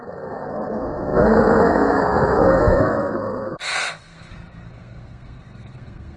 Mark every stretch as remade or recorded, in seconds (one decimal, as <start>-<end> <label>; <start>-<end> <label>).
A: 0.0-6.2 remade